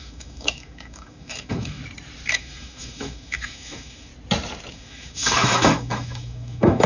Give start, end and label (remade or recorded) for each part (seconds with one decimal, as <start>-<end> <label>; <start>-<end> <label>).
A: 0.0-1.8 remade; 1.8-2.3 recorded; 2.3-4.1 remade; 4.1-4.7 recorded; 4.7-6.9 remade